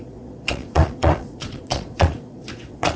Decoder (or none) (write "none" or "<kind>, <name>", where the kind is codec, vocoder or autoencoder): vocoder, Vocos